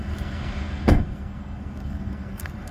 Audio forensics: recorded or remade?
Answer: remade